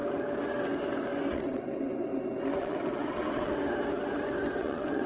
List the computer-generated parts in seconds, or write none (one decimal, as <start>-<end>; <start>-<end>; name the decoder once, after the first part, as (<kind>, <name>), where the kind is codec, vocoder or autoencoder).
1.3-2.1 (vocoder, WaveNeXt); 2.6-3.5; 4.6-5.1